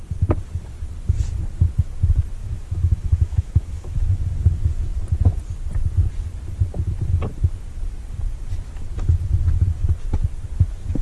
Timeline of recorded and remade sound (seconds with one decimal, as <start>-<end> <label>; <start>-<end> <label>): 0.0-2.4 recorded; 2.4-4.1 remade; 4.1-11.0 recorded